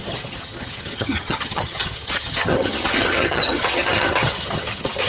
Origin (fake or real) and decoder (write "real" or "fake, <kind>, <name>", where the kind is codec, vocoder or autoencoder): fake, vocoder, HiFi-GAN